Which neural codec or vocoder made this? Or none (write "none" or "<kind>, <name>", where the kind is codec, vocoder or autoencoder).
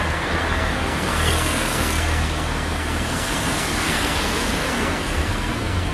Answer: codec, SNAC